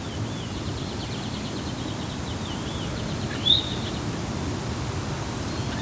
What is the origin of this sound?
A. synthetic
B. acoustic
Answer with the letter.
B